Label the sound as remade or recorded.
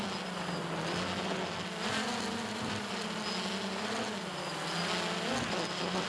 recorded